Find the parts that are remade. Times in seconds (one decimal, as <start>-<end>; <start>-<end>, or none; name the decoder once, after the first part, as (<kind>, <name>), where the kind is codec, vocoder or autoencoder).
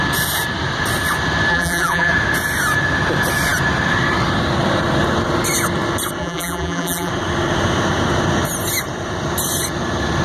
1.5-2.1 (vocoder, BigVGAN v2); 6.2-7.1